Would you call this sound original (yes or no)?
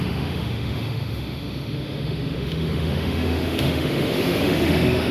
no